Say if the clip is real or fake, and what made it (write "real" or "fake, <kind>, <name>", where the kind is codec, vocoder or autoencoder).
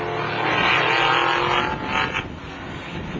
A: real